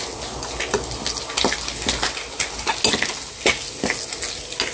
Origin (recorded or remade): recorded